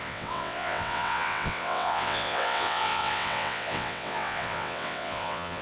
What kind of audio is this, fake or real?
fake